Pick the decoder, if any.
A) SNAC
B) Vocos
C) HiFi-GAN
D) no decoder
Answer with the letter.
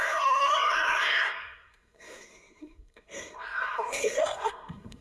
A